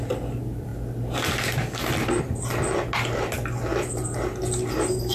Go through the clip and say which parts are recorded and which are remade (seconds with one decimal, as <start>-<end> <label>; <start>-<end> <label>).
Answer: 0.0-3.7 recorded; 3.7-4.4 remade; 4.4-5.1 recorded